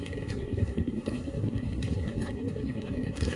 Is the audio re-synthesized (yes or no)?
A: yes